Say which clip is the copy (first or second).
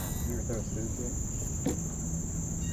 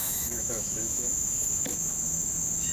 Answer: second